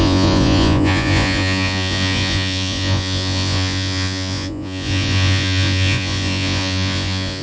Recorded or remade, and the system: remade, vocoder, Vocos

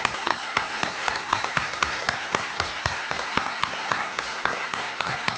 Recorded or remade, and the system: remade, codec, SNAC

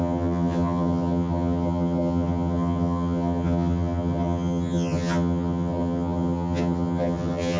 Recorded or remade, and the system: remade, vocoder, HiFi-GAN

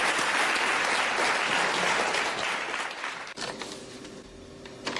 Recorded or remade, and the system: recorded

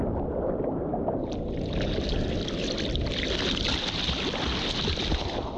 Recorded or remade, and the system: recorded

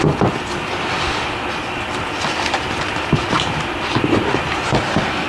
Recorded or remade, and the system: recorded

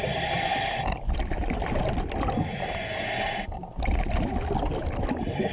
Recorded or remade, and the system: recorded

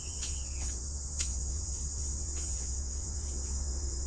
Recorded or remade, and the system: remade, vocoder, WaveNeXt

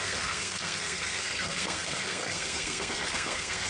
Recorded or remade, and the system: remade, codec, SNAC